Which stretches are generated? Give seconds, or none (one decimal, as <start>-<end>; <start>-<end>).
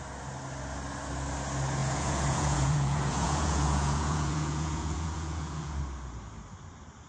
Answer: 1.8-5.8